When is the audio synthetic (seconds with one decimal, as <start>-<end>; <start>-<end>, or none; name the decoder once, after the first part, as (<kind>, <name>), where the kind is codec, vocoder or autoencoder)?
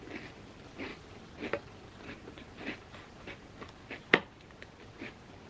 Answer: none